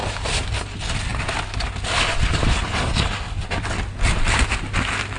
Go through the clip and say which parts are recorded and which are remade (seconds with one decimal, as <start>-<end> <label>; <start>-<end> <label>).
0.0-5.2 recorded